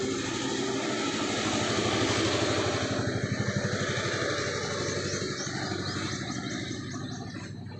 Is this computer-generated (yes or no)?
no